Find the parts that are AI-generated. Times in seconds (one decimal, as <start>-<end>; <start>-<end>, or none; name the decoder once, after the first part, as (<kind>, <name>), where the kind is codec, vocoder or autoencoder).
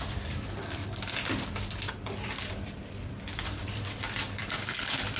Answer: 0.0-0.8 (vocoder, BigVGAN v2); 1.9-5.2